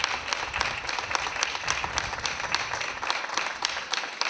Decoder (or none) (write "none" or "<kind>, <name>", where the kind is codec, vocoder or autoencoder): none